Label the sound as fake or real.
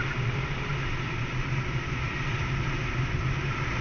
real